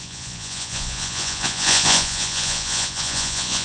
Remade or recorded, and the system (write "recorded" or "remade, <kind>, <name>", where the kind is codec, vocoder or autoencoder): remade, vocoder, Vocos